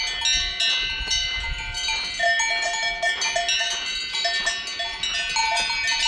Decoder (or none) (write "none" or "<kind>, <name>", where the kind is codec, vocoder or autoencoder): none